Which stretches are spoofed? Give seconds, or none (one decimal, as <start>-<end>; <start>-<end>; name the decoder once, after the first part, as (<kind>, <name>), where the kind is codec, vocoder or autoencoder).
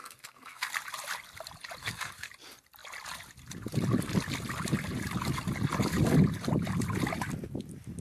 0.0-0.7 (codec, SNAC); 1.8-2.3